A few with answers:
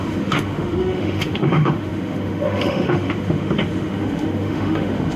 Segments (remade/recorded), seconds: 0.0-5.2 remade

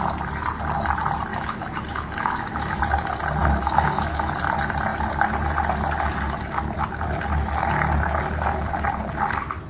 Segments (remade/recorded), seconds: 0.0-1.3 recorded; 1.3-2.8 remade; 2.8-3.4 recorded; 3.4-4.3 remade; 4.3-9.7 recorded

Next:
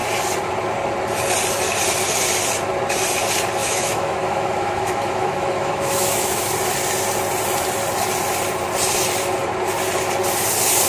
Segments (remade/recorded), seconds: 0.0-3.6 recorded; 3.6-6.5 remade; 6.5-10.9 recorded